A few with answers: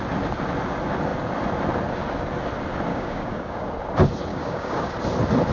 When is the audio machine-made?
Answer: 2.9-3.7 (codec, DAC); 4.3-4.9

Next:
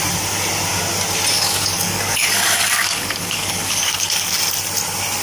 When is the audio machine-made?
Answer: 1.3-4.4 (codec, DAC)

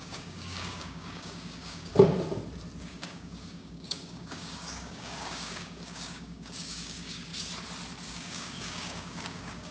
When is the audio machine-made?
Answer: 0.0-1.9 (codec, DAC); 2.8-7.3; 8.1-9.7